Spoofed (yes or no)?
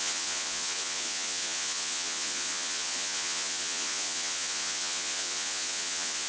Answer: yes